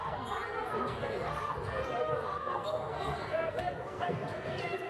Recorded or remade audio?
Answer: remade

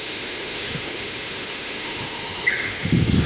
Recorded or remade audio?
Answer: remade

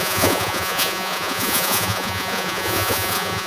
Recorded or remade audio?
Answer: remade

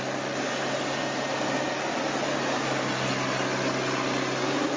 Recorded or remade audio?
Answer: recorded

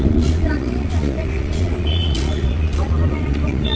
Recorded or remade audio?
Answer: remade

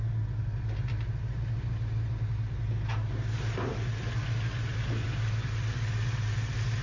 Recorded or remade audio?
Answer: recorded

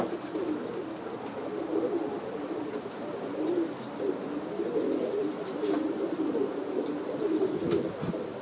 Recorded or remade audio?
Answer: recorded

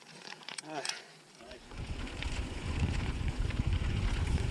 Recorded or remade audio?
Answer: remade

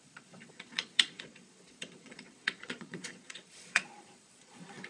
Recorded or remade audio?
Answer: remade